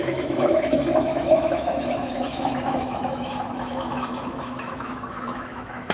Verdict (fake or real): fake